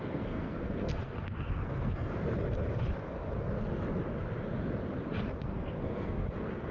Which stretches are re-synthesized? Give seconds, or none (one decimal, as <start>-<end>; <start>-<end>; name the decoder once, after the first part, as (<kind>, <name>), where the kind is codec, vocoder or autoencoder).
0.0-2.1 (codec, SNAC); 5.4-6.7